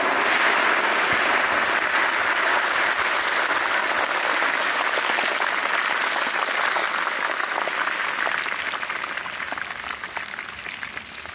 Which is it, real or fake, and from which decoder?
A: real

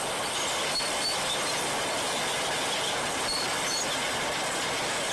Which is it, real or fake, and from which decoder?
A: real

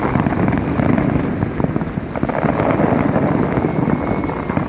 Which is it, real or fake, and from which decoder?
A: real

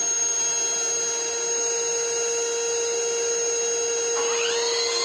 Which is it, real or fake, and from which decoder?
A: real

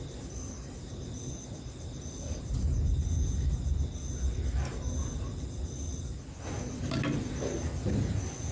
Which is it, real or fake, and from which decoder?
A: real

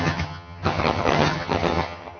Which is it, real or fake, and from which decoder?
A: fake, vocoder, HiFi-GAN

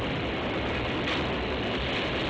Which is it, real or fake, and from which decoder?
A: real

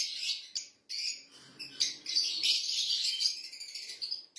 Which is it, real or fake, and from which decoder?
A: real